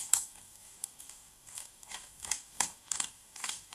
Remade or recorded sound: remade